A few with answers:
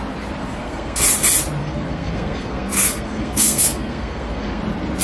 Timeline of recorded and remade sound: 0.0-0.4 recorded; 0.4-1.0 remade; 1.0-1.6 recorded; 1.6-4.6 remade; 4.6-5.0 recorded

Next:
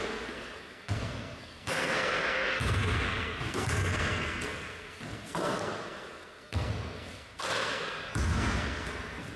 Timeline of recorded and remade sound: 0.0-9.4 remade